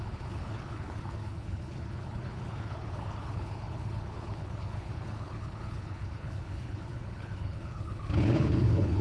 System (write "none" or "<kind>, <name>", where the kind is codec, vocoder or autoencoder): codec, HILCodec